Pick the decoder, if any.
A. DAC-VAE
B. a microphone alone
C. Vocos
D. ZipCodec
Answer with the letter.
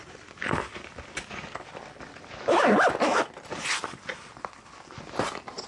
B